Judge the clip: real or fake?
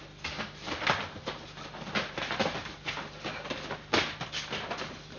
real